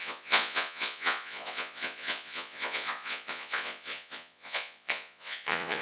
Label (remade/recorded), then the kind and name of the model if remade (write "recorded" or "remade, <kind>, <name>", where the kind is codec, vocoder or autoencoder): remade, vocoder, Vocos